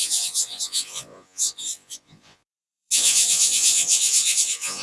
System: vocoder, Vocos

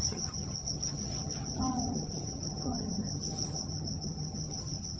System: vocoder, HiFi-GAN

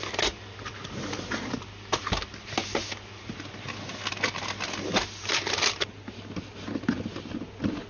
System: none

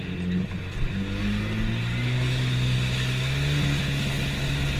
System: none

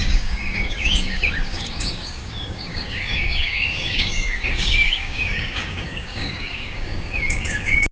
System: codec, DAC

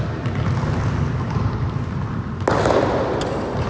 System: none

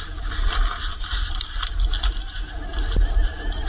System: none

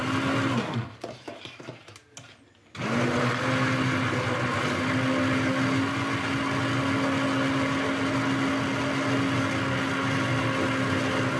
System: none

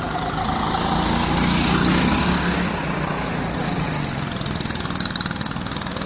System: none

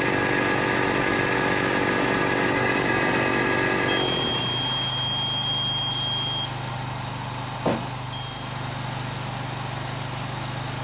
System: none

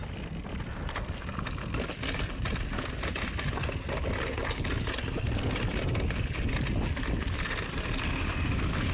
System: none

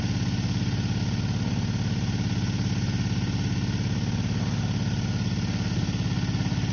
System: none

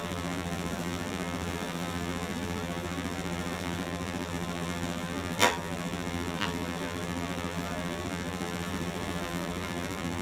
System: vocoder, BigVGAN v2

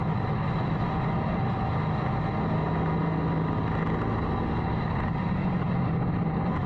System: none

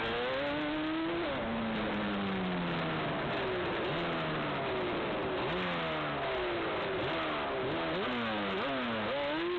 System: none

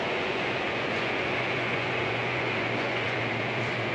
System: vocoder, Vocos